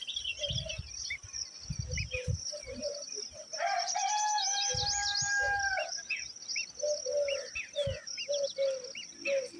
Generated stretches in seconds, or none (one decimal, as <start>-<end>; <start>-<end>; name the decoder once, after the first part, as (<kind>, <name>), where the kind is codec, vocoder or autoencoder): none